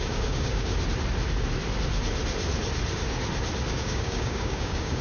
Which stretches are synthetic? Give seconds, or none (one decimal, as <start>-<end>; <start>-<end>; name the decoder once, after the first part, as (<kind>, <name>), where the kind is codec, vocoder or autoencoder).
0.0-0.7 (codec, DAC); 3.7-5.0